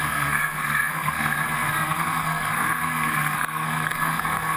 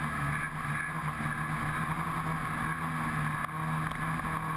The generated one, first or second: first